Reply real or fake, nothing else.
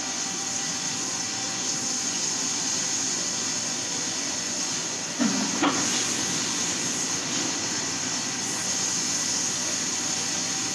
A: fake